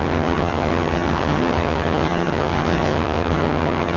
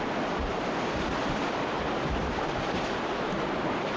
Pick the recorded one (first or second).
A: second